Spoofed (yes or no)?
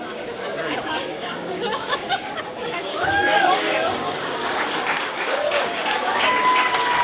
yes